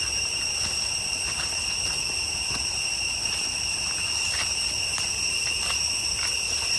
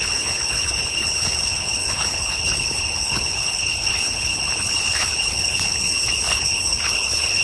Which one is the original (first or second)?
first